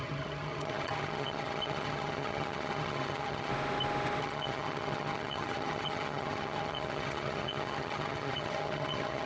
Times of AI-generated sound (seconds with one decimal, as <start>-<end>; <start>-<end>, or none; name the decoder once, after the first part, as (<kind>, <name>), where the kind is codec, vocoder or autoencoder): 0.0-3.5 (vocoder, HiFi-GAN); 4.2-9.3